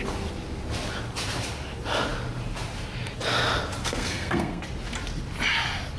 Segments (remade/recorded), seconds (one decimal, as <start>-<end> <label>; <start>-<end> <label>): 0.0-3.8 recorded; 3.8-4.6 remade; 4.6-6.0 recorded